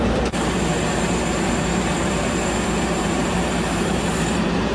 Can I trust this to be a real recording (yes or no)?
no